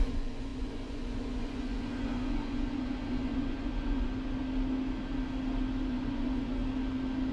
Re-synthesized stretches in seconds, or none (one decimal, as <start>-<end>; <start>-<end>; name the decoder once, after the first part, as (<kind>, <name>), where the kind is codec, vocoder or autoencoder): 0.0-4.1 (vocoder, Vocos); 5.9-6.6